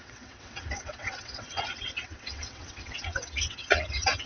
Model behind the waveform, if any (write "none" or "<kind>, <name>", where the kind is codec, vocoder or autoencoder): vocoder, WaveNeXt